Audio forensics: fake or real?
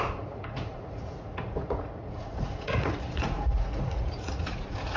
fake